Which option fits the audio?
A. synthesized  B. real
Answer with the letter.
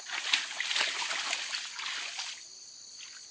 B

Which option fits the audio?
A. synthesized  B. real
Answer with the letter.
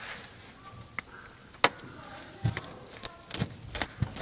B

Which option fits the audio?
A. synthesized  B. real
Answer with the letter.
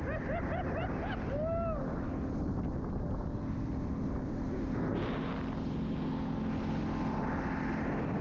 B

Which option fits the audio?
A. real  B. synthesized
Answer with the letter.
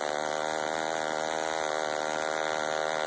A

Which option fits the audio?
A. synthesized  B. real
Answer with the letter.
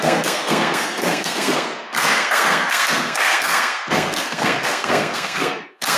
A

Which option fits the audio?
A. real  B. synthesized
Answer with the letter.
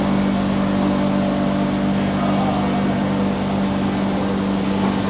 A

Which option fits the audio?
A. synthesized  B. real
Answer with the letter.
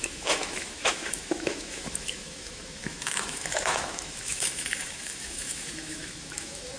A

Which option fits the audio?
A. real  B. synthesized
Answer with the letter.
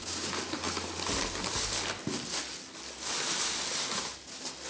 A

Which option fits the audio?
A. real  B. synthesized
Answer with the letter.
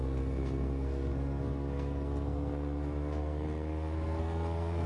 B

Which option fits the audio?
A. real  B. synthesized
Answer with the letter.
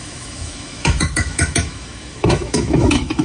B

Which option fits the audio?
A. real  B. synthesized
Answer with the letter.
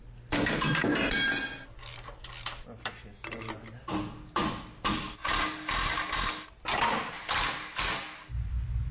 A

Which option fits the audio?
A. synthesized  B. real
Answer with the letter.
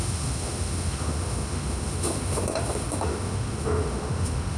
A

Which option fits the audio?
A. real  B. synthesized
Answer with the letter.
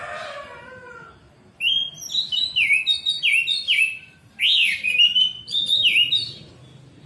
A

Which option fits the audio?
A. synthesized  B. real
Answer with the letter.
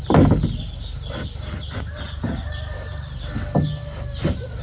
B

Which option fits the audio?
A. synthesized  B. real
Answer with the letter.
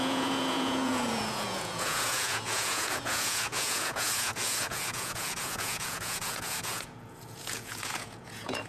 A